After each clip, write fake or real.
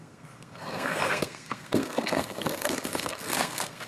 fake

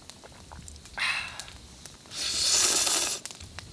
real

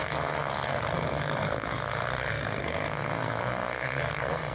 fake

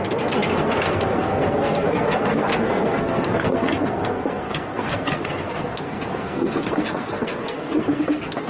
fake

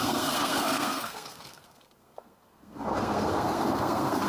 fake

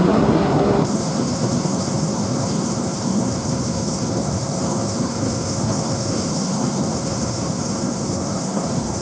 fake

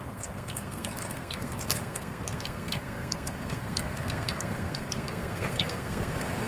fake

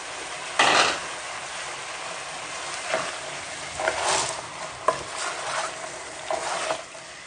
real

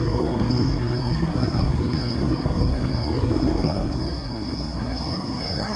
fake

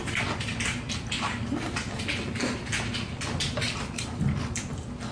real